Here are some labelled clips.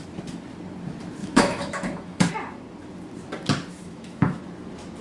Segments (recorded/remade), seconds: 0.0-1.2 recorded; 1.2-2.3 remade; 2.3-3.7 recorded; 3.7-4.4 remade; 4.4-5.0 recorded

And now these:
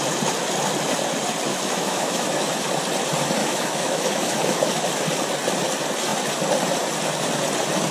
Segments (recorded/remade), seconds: 0.0-1.5 recorded; 1.5-2.5 remade; 2.5-3.4 recorded; 3.4-4.9 remade; 4.9-7.9 recorded

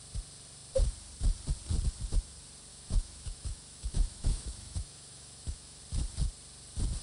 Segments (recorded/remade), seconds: 0.0-2.7 recorded; 2.7-5.8 remade; 5.8-7.0 recorded

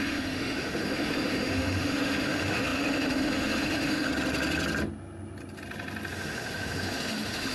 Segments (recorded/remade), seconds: 0.0-4.1 remade; 4.1-6.1 recorded; 6.1-7.5 remade

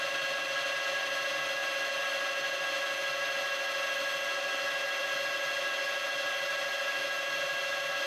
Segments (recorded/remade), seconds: 0.0-8.1 recorded

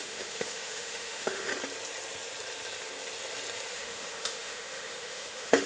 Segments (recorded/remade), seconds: 0.0-1.5 remade; 1.5-3.7 recorded; 3.7-5.7 remade